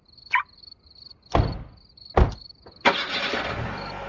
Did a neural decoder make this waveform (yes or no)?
no